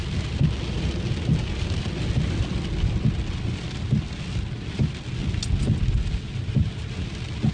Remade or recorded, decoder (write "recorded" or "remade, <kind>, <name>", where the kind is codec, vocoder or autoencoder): recorded